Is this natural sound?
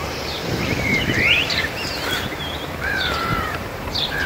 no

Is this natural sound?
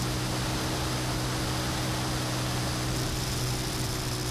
yes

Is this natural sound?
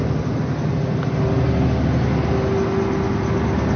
yes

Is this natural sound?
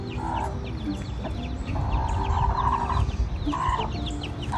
yes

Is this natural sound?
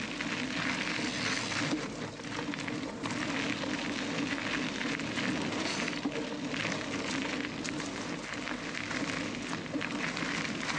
yes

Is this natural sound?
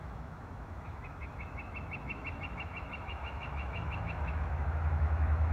no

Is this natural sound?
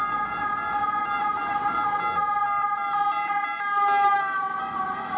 yes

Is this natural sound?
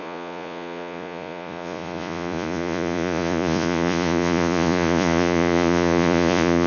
no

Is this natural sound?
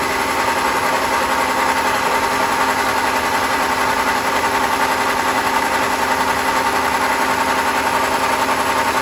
yes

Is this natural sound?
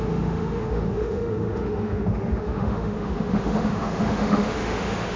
no